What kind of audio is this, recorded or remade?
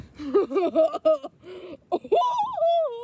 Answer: recorded